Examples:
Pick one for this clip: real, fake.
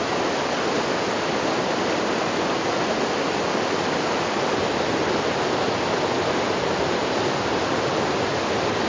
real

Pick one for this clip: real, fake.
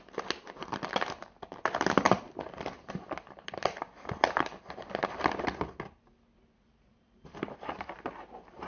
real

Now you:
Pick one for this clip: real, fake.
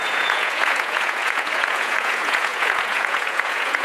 fake